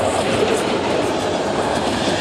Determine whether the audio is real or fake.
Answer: real